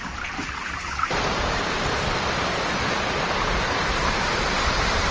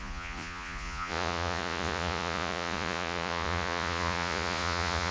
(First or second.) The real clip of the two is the first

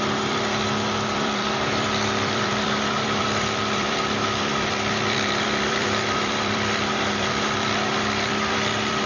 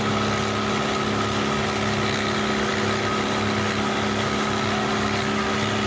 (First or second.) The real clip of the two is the second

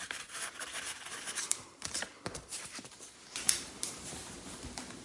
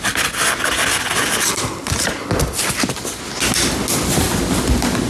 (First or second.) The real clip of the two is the second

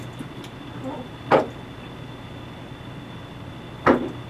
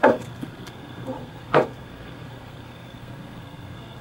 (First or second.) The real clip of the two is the first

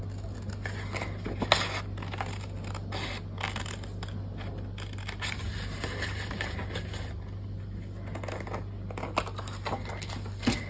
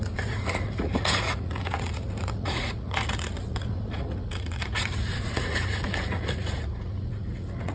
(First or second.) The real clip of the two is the first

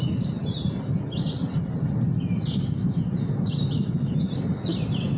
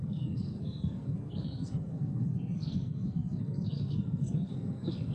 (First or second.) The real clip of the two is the first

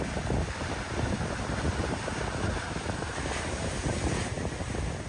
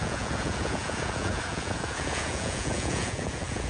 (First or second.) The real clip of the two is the first